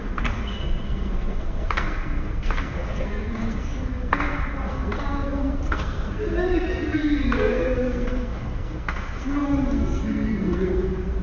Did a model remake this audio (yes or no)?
yes